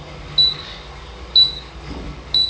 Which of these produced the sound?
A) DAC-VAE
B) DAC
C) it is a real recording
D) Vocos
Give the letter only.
B